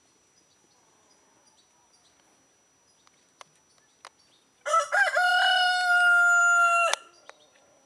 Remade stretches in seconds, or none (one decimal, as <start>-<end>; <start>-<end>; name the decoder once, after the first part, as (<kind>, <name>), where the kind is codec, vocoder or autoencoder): none